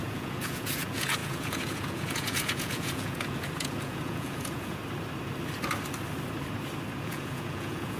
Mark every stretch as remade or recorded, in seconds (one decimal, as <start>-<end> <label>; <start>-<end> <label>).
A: 0.0-4.8 remade; 4.8-7.0 recorded; 7.0-8.0 remade